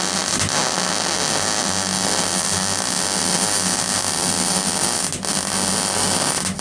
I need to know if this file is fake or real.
real